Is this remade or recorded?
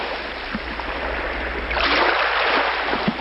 recorded